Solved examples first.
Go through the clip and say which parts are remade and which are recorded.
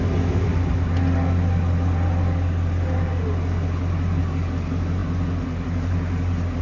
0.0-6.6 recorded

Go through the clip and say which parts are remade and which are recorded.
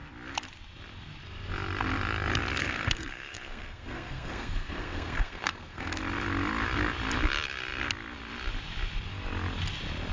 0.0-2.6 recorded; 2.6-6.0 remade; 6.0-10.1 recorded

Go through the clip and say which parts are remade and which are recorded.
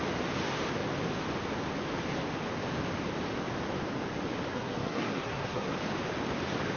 0.0-4.5 recorded; 4.5-5.7 remade; 5.7-6.8 recorded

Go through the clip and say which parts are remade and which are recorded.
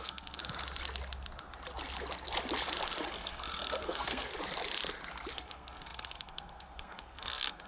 0.0-0.4 remade; 0.4-3.1 recorded; 3.1-4.3 remade; 4.3-5.3 recorded; 5.3-7.7 remade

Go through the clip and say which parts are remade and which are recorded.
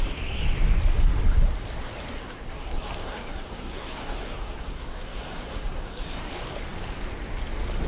0.0-2.1 recorded; 2.1-6.3 remade; 6.3-7.9 recorded